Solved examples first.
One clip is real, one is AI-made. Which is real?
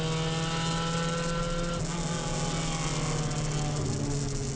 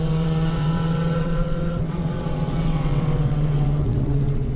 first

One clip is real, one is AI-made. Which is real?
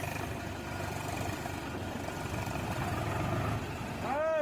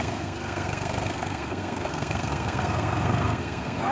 first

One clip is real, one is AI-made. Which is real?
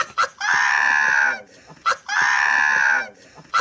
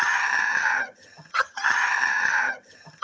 first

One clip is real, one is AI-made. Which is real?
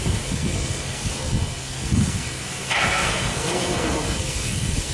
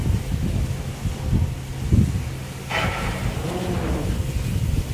second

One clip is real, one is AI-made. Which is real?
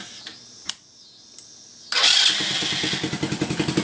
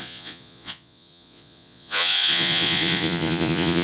first